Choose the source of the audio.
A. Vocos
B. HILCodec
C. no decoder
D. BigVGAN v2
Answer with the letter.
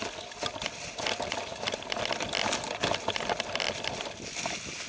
C